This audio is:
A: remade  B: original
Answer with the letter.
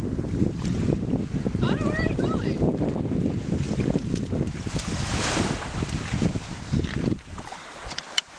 A